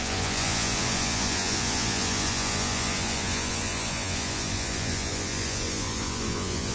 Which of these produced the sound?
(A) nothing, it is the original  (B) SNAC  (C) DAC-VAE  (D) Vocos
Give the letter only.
D